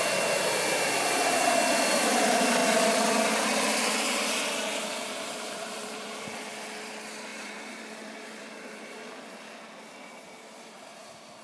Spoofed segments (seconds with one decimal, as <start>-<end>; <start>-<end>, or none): 5.0-6.5; 7.3-9.0